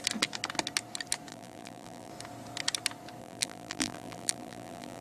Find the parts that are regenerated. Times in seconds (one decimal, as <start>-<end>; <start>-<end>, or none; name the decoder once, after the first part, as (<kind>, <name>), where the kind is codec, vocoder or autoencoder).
1.3-2.1 (vocoder, BigVGAN v2); 3.2-5.0